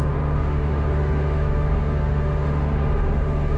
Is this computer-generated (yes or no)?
yes